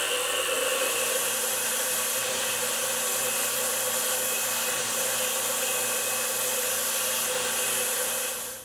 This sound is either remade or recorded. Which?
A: recorded